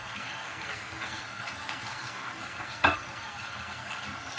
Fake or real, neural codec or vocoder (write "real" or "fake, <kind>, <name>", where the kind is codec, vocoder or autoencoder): fake, codec, SNAC